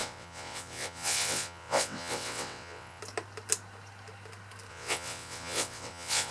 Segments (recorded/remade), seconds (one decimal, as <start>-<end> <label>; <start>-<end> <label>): 0.0-3.0 remade; 3.0-4.7 recorded; 4.7-6.3 remade